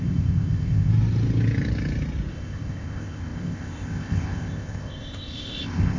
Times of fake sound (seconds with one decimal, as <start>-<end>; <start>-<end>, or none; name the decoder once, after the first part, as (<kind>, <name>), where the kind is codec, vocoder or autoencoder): 0.0-0.9 (codec, ZipCodec); 2.3-6.0